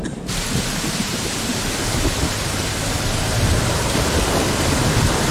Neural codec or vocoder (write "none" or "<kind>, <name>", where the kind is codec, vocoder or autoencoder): vocoder, BigVGAN v2